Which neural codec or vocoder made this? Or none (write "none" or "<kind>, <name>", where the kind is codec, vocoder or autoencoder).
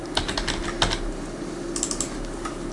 none